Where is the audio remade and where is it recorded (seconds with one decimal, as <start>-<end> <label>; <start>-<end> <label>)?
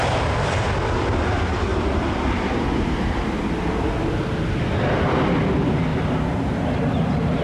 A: 0.0-1.7 recorded; 1.7-3.4 remade; 3.4-7.4 recorded